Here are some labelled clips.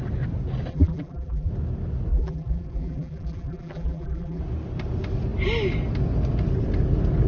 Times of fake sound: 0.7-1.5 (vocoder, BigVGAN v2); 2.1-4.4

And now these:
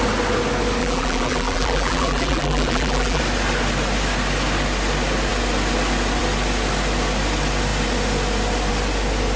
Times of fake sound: 0.8-3.2 (vocoder, BigVGAN v2)